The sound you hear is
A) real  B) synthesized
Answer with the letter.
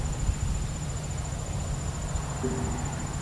A